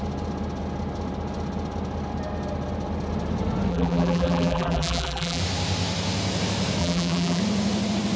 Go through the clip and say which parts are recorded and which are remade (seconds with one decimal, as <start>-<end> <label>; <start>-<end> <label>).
0.0-3.7 recorded; 3.7-5.4 remade; 5.4-6.8 recorded; 6.8-7.4 remade; 7.4-8.2 recorded